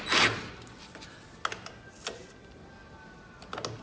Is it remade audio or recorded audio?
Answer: recorded